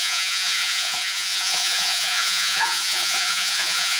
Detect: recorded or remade remade